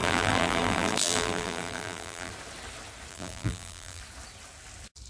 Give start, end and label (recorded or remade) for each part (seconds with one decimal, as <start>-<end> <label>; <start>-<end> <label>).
0.0-2.3 remade; 2.3-3.1 recorded; 3.1-4.0 remade; 4.0-5.1 recorded